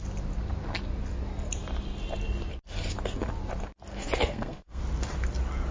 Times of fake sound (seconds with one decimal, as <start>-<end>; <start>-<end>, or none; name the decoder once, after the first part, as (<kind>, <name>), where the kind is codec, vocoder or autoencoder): 3.9-4.8 (codec, SNAC)

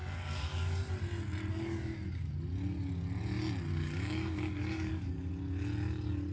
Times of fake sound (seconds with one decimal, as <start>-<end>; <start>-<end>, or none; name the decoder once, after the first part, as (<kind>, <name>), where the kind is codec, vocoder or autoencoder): 0.0-0.9 (codec, DAC); 1.5-2.3; 3.7-5.3